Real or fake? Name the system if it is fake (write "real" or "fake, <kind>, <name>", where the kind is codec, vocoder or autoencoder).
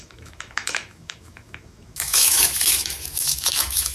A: fake, autoencoder, DAC-VAE